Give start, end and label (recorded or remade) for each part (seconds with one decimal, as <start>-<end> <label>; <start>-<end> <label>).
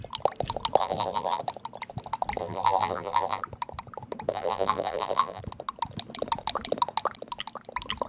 0.0-0.8 recorded; 0.8-1.4 remade; 1.4-2.4 recorded; 2.4-3.4 remade; 3.4-4.3 recorded; 4.3-5.4 remade; 5.4-8.1 recorded